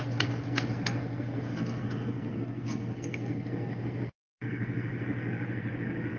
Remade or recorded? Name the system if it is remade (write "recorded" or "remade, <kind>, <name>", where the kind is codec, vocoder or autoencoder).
remade, codec, SNAC